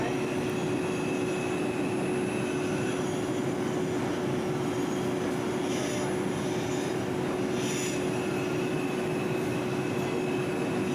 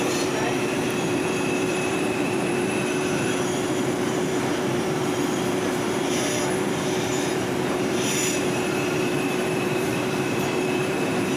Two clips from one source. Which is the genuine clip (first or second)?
first